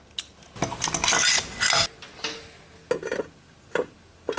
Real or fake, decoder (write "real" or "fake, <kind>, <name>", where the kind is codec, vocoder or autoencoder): real